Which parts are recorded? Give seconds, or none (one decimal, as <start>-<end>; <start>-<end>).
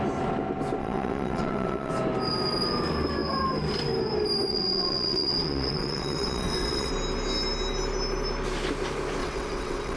0.0-0.8; 1.9-4.5; 6.9-9.2